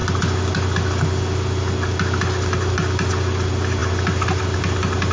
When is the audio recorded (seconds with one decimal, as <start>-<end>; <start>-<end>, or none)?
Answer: 0.0-5.1